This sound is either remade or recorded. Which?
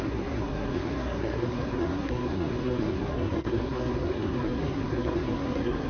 remade